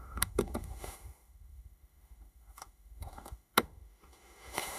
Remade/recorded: remade